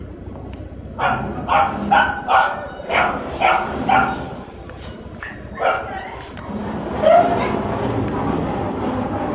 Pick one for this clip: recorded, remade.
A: recorded